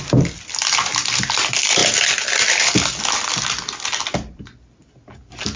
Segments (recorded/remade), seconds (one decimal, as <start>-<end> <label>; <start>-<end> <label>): 0.0-5.6 recorded